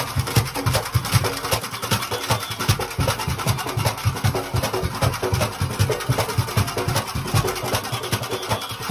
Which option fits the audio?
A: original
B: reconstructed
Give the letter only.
A